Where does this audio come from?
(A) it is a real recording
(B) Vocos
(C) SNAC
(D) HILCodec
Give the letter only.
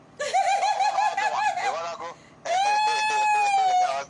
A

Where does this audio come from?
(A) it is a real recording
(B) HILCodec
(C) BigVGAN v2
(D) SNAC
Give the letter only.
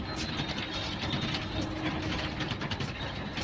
A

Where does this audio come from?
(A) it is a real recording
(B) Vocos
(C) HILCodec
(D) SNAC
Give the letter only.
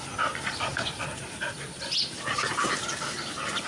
A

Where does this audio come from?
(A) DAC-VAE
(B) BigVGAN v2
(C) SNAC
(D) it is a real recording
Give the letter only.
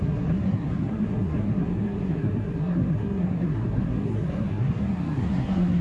C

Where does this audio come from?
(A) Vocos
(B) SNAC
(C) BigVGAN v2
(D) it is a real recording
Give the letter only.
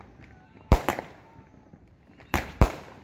C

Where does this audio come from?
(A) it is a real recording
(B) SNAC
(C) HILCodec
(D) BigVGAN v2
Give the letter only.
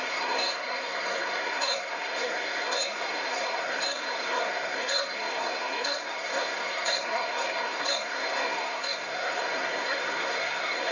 B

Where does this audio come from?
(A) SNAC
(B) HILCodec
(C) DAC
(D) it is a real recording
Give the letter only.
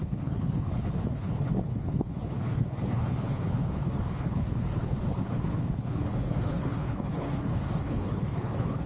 B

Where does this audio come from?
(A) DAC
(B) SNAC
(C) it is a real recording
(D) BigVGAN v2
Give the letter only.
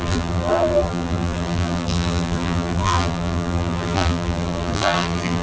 D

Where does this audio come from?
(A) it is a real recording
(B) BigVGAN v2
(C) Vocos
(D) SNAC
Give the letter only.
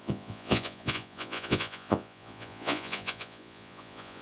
C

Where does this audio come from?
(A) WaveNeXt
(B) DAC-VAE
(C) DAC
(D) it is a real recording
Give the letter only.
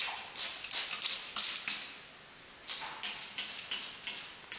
D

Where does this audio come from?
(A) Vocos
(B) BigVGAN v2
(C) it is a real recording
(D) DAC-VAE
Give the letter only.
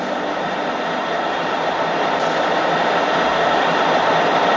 B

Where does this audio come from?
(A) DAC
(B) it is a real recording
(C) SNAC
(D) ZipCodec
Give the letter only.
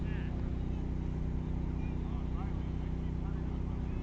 B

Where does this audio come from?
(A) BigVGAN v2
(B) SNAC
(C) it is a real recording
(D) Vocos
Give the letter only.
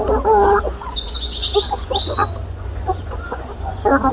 D